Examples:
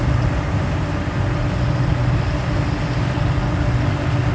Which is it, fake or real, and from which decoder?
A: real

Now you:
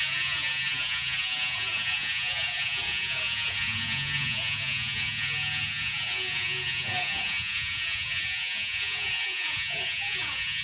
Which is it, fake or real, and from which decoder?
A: fake, vocoder, Vocos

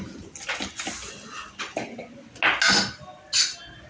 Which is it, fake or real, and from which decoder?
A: real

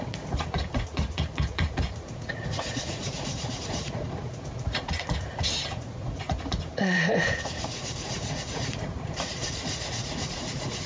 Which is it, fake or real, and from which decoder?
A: fake, vocoder, Vocos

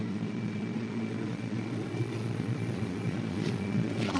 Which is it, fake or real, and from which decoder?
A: fake, vocoder, Vocos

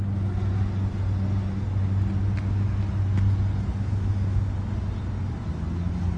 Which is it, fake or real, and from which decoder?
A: real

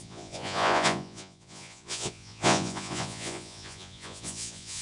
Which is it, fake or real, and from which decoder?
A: fake, vocoder, Vocos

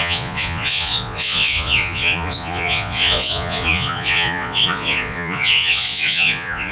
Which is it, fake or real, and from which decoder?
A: fake, vocoder, Vocos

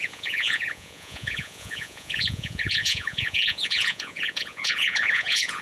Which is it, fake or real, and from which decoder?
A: fake, vocoder, Vocos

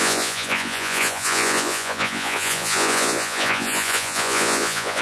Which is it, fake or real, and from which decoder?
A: fake, vocoder, Vocos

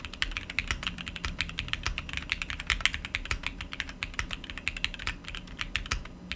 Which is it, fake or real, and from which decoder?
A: real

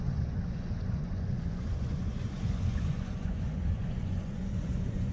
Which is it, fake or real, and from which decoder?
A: fake, vocoder, Vocos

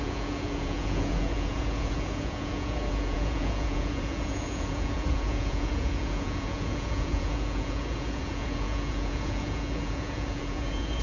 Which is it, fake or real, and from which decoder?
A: fake, vocoder, Vocos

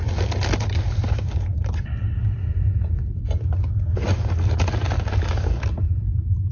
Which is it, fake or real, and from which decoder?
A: real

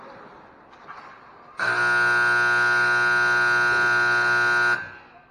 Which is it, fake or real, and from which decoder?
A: real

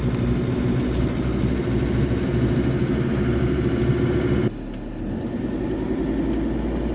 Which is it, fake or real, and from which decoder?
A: real